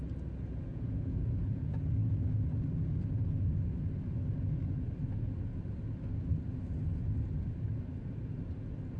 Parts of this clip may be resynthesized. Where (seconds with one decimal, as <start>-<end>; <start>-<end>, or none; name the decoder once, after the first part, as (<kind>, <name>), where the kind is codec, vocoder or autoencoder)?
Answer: 0.7-1.6 (vocoder, Vocos)